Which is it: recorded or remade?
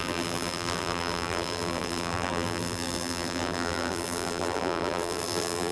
remade